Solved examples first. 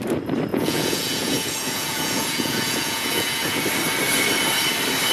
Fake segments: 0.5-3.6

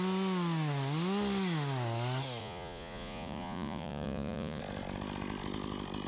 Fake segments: 2.4-4.6

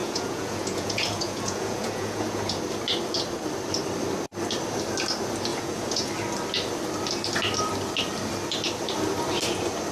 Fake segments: 0.0-2.6; 5.5-6.1

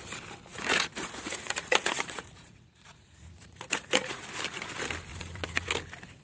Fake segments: 0.5-4.2; 5.1-5.7

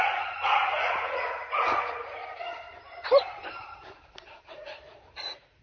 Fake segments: 0.0-2.2; 4.4-5.6

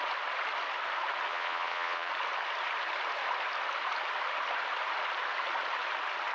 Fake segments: 1.3-2.1